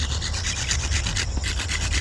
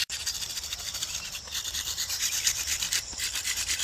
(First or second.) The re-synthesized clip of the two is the second